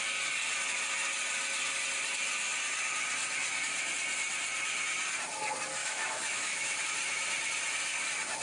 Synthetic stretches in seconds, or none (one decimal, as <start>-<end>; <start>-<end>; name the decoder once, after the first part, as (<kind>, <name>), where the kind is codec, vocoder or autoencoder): 5.8-6.8 (autoencoder, DAC-VAE)